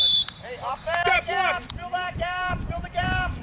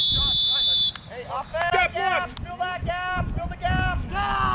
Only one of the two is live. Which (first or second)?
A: second